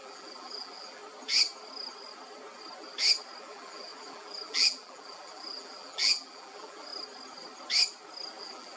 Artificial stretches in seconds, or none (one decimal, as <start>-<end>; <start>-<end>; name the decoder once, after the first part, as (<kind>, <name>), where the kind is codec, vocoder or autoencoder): 0.0-1.0 (vocoder, BigVGAN v2); 3.4-6.9; 8.4-8.8